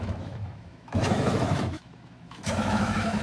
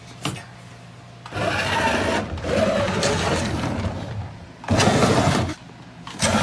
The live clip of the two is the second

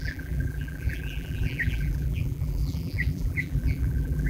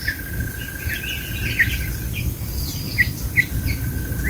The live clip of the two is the second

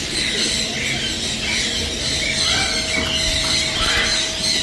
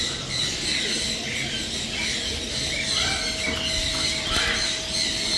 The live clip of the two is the first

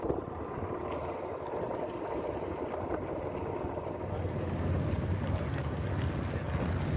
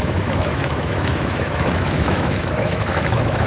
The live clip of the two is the first